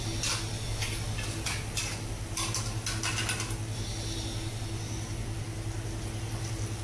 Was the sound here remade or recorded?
recorded